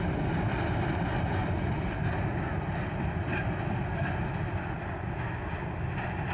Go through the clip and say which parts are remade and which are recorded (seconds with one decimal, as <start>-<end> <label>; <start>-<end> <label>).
0.0-6.3 recorded